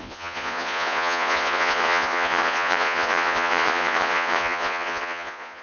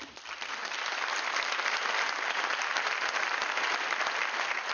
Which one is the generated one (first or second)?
first